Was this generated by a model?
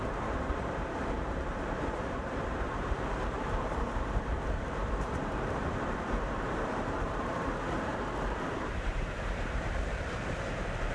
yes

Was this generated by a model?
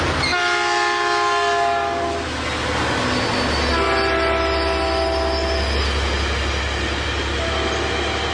no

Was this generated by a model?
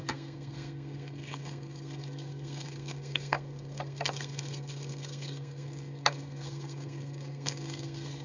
yes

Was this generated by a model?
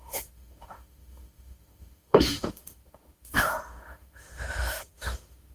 yes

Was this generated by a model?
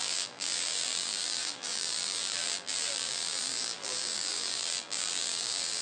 yes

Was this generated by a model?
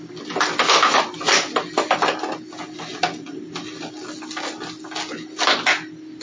no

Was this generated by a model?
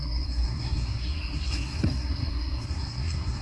yes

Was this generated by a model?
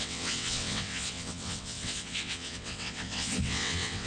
yes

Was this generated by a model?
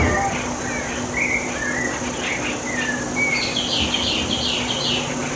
no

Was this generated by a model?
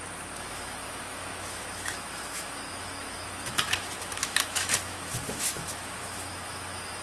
yes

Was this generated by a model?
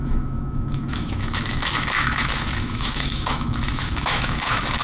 yes